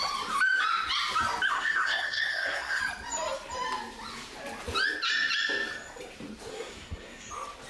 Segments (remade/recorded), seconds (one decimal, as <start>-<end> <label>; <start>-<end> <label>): 0.0-1.5 recorded; 1.5-2.8 remade; 2.8-6.5 recorded; 6.5-7.3 remade; 7.3-7.7 recorded